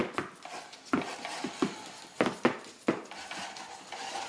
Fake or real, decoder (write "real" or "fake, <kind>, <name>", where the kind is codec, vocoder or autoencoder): real